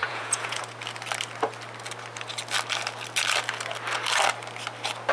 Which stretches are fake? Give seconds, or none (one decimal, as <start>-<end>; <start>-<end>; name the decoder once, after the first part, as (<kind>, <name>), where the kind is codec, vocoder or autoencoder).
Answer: 0.0-0.6 (vocoder, Vocos)